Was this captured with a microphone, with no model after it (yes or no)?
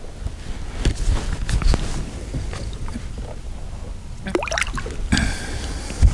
yes